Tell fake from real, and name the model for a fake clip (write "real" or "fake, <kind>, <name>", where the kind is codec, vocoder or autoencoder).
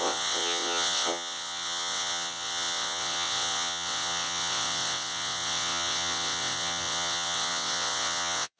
fake, vocoder, WaveNeXt